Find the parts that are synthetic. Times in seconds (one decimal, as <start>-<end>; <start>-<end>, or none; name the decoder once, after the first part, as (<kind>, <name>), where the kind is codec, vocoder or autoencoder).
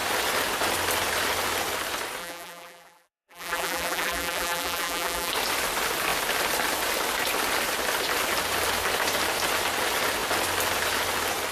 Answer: 2.2-5.3 (vocoder, BigVGAN v2)